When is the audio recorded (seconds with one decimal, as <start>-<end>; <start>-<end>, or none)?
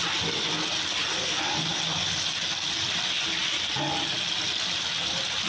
0.0-5.5